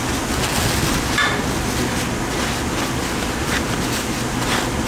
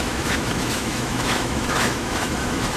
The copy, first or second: second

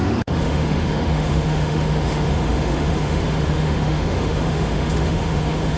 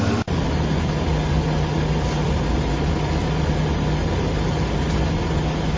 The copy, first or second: first